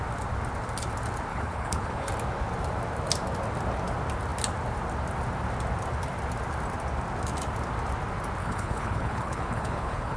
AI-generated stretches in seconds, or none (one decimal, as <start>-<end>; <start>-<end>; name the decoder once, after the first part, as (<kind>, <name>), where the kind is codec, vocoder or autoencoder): 1.3-2.1 (codec, HILCodec); 8.4-10.2

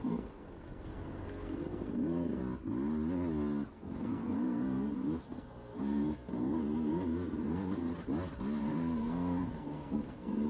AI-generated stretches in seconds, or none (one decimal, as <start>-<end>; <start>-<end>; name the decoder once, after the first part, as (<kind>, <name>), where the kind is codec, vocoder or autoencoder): 0.0-2.4 (codec, SNAC); 3.7-7.9; 8.6-10.5

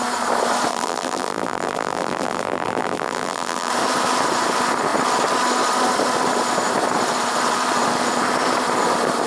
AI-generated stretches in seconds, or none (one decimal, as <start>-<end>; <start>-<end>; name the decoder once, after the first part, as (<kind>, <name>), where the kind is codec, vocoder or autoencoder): 0.7-3.7 (vocoder, BigVGAN v2)

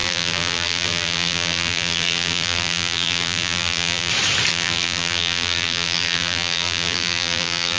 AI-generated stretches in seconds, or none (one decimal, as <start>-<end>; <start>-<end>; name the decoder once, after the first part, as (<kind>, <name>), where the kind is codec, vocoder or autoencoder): 0.0-4.1 (vocoder, BigVGAN v2); 4.5-7.8

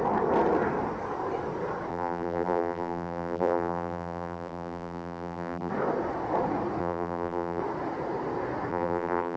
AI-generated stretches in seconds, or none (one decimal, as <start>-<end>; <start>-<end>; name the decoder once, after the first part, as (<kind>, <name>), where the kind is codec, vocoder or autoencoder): 1.9-5.7 (vocoder, BigVGAN v2); 6.8-7.6; 8.7-9.4

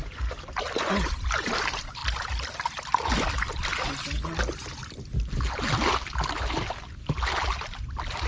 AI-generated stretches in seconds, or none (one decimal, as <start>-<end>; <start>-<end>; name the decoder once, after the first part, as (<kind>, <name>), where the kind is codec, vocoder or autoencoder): none

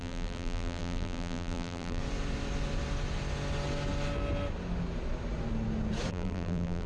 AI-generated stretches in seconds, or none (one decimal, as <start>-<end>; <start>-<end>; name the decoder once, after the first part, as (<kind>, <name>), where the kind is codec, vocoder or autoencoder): 0.0-2.0 (vocoder, BigVGAN v2); 6.1-6.9